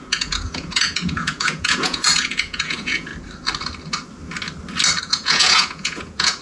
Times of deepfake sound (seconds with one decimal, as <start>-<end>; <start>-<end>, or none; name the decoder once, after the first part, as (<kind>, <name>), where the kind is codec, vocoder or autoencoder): 0.0-3.1 (vocoder, Vocos); 5.0-6.4